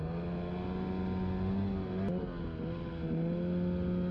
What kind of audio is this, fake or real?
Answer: real